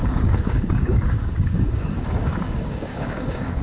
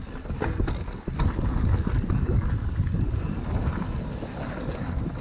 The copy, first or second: first